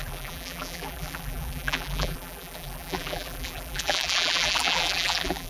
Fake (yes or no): yes